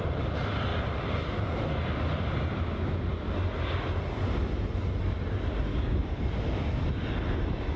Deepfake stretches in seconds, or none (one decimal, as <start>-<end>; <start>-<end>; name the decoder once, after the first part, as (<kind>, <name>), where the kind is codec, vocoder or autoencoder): 5.7-6.2 (codec, DAC)